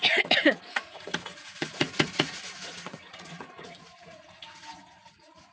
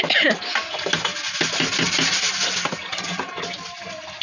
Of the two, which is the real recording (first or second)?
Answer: second